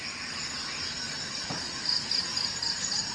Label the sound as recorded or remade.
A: remade